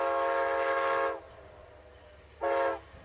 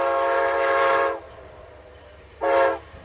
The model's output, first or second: second